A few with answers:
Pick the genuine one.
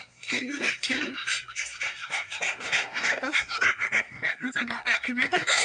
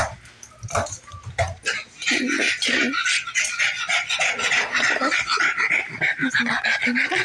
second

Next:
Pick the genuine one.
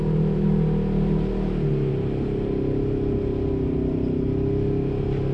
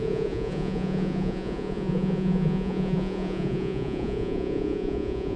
first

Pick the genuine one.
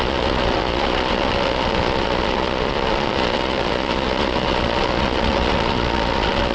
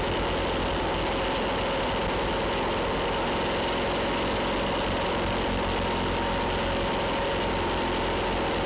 second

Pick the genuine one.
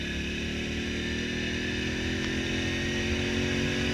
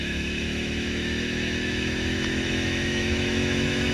first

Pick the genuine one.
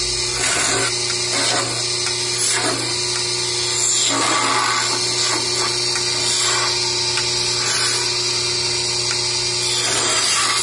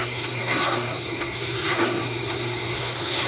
first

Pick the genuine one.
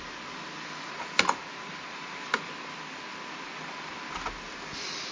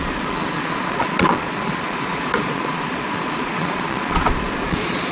first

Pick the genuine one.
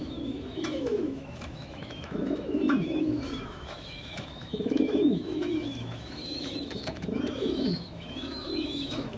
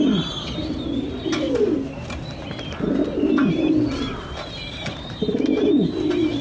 second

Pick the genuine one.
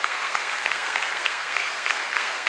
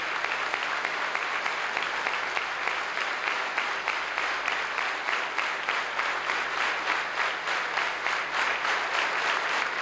second